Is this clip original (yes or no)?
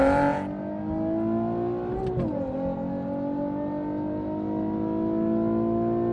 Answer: yes